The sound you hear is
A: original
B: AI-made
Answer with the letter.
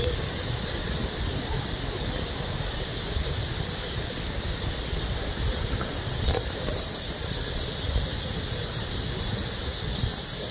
A